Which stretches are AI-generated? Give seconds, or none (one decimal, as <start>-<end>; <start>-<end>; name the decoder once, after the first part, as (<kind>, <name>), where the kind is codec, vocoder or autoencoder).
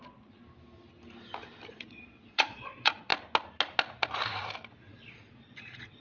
0.0-0.4 (vocoder, Vocos); 1.7-3.1; 4.8-6.0